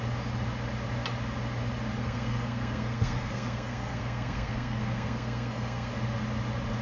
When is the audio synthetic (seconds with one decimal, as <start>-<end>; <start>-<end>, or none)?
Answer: 2.0-5.9